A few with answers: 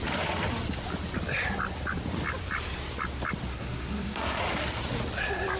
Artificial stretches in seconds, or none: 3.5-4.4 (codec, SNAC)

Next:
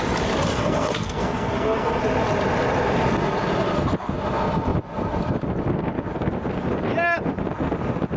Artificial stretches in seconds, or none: 0.5-2.0 (codec, SNAC)

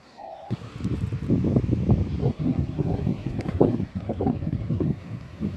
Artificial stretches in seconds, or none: 0.0-0.7 (codec, SNAC); 2.2-5.6

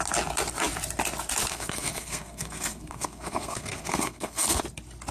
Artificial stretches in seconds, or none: 1.5-4.6 (codec, SNAC)